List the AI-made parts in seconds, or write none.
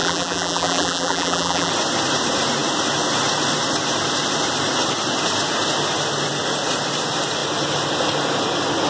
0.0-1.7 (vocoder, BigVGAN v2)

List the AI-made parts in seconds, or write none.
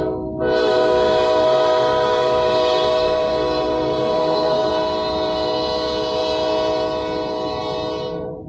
0.6-4.7 (codec, SNAC)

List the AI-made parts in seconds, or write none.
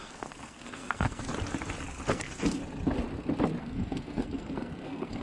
0.0-1.3 (codec, SNAC); 2.1-2.6; 3.6-5.2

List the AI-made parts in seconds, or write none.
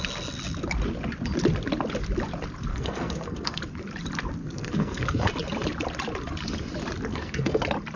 2.7-3.6 (codec, SNAC); 4.4-5.3; 7.1-7.6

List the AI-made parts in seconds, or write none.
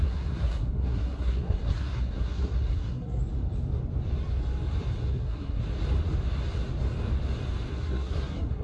0.0-3.2 (codec, SNAC); 5.1-5.6; 7.7-8.6